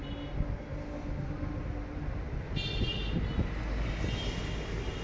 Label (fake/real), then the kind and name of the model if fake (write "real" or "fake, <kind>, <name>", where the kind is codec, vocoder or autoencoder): real